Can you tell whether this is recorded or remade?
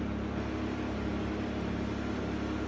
recorded